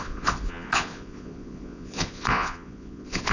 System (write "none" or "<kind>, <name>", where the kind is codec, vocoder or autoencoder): vocoder, Vocos